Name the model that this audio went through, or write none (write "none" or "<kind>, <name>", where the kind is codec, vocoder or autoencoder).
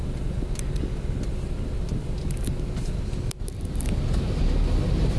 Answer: none